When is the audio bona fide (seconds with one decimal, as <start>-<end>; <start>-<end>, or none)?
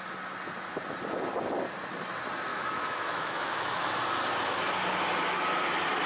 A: 0.0-2.5; 4.0-6.1